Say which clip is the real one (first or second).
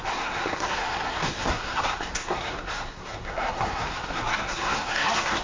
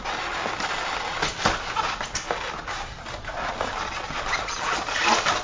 second